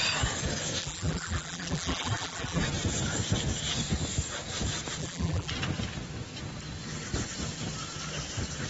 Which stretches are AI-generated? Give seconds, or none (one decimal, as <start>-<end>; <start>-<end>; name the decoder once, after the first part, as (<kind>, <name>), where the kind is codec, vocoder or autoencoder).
0.8-2.6 (vocoder, BigVGAN v2); 5.0-5.5